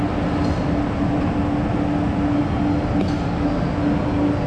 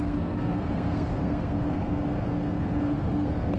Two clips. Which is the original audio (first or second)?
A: first